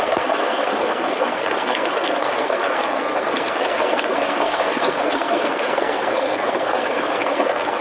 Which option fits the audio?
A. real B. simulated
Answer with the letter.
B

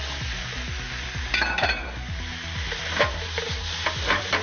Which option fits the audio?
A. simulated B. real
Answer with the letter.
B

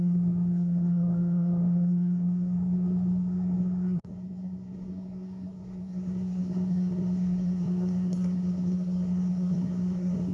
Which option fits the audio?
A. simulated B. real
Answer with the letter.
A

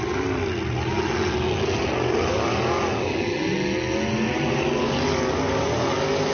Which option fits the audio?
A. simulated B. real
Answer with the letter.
B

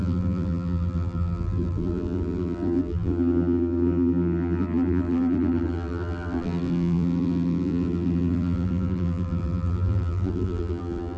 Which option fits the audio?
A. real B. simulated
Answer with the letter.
B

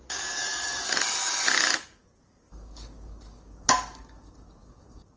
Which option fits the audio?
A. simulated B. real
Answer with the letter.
A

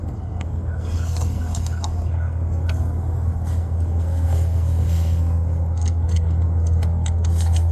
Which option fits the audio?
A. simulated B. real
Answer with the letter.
A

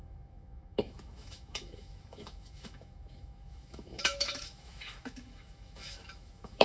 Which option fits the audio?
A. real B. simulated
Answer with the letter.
B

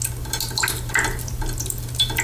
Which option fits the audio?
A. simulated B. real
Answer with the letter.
B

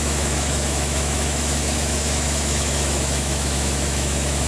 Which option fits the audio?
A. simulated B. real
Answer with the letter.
A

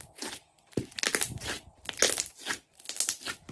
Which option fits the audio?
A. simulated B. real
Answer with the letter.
B